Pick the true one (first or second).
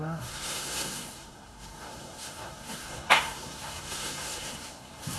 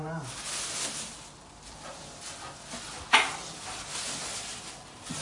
second